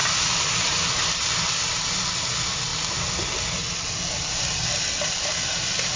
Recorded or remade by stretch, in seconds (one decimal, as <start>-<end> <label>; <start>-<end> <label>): 0.0-6.0 recorded